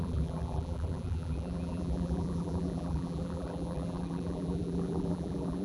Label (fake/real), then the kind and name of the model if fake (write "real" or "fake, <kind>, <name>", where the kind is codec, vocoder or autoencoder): fake, vocoder, BigVGAN v2